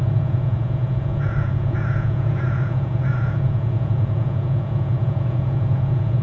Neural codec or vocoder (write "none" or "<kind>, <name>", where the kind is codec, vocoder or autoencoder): vocoder, Vocos